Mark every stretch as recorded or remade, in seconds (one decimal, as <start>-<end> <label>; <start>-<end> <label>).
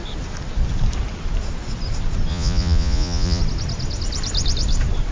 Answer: 0.0-2.3 recorded; 2.3-3.4 remade; 3.4-5.1 recorded